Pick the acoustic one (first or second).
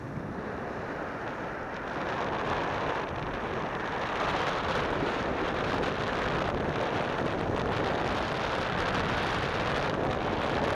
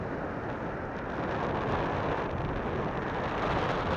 second